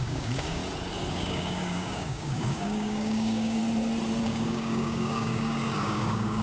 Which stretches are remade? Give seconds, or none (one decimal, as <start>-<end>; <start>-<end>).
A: 0.0-0.6; 1.1-3.6; 4.2-6.4